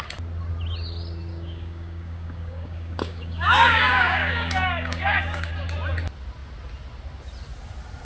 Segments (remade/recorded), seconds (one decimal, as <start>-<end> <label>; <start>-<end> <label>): 0.0-1.3 recorded; 1.3-5.5 remade; 5.5-8.0 recorded